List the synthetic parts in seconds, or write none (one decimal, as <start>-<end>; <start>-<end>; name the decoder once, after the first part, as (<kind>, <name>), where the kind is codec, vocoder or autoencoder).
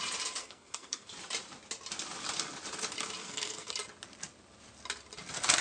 0.4-1.1 (codec, SNAC); 3.2-3.7